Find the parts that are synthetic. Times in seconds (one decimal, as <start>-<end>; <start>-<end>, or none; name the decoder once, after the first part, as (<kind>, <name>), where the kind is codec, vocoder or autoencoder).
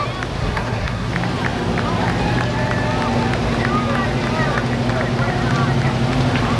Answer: 0.4-1.1 (codec, SNAC)